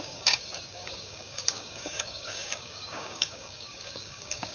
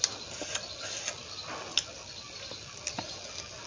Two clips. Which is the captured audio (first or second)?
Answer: second